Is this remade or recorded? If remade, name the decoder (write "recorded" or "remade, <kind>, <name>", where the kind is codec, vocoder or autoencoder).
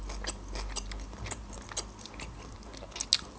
recorded